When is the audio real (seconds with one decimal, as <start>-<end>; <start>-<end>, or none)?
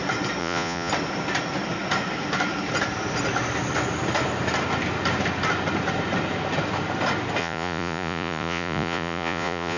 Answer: 0.0-0.4; 0.9-7.4